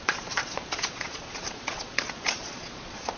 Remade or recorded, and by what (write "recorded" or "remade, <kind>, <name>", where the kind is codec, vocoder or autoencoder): remade, vocoder, Vocos